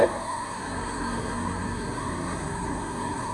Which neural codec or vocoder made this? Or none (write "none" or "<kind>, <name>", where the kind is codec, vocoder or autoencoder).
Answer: codec, SNAC